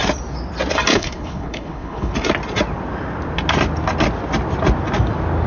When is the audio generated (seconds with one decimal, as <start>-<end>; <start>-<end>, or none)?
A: 0.9-2.1